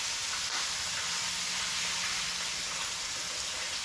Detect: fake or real real